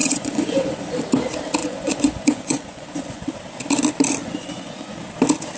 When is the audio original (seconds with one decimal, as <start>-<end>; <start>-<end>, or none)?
1.0-1.6; 3.3-4.2; 5.0-5.6